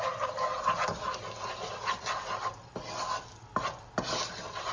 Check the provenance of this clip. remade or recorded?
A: recorded